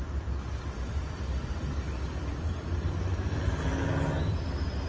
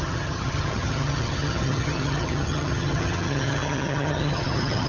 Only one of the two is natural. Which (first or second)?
first